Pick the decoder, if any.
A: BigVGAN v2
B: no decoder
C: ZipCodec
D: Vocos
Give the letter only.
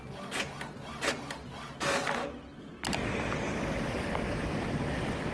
B